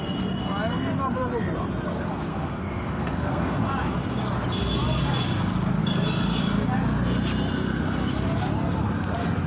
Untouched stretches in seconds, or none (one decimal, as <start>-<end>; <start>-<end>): 0.0-2.3; 3.7-5.8; 6.4-9.5